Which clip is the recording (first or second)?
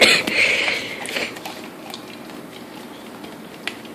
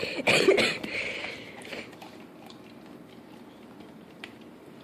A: first